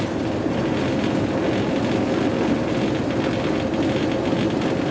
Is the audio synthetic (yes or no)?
no